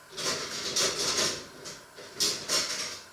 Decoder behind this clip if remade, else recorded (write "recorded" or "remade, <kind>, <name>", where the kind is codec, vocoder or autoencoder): recorded